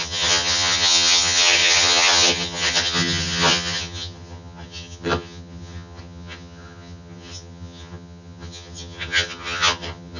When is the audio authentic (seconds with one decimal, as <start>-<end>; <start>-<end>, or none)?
none